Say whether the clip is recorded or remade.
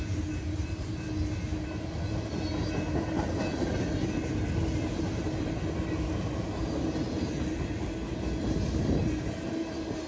recorded